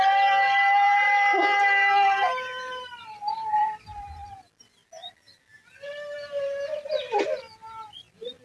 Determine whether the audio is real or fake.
fake